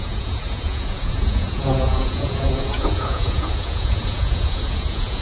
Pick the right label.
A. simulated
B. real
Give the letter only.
A